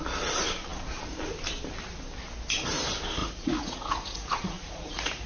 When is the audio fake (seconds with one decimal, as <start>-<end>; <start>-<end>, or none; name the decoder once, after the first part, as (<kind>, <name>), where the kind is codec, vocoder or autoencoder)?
3.2-5.3 (vocoder, Vocos)

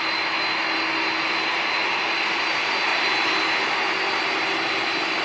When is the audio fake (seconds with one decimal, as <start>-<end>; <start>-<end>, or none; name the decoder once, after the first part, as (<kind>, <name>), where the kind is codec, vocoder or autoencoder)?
none

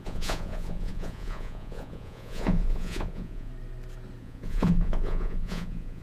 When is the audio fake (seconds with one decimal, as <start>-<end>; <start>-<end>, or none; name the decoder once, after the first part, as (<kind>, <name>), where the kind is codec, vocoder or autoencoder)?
0.0-3.5 (vocoder, Vocos); 4.2-6.0

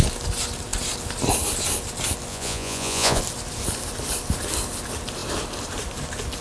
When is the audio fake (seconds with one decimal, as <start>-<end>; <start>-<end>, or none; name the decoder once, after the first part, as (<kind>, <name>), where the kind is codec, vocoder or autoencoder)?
2.3-3.2 (vocoder, Vocos)

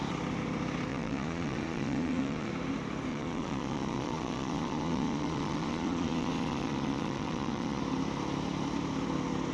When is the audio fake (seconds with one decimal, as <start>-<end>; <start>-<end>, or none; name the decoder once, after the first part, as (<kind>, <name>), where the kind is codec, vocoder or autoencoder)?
0.9-2.5 (vocoder, Vocos); 3.1-7.8

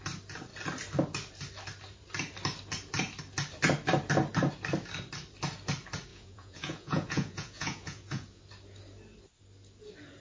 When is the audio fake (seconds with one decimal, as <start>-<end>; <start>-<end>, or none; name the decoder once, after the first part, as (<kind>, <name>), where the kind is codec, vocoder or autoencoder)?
6.1-8.4 (vocoder, Vocos)